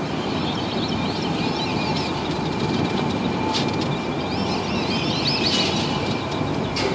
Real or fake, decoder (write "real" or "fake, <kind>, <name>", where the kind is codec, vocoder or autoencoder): real